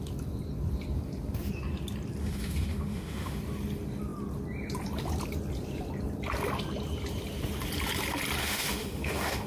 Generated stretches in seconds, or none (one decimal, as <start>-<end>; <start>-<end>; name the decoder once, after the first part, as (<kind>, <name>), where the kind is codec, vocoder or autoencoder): 2.2-3.4 (autoencoder, DAC-VAE); 8.4-9.5